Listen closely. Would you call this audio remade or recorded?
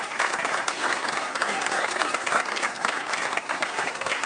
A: remade